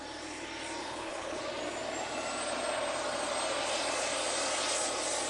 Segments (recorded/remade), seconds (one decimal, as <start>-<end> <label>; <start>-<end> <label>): 0.0-0.8 recorded; 0.8-1.4 remade; 1.4-5.3 recorded